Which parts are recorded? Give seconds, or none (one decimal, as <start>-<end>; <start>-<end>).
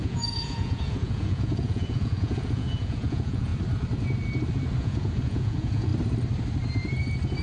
3.5-4.8; 5.9-7.4